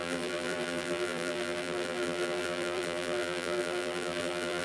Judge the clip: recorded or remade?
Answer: remade